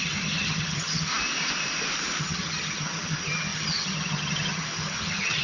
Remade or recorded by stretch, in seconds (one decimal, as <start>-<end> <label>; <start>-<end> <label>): 0.0-1.1 remade; 1.1-2.2 recorded; 2.2-5.4 remade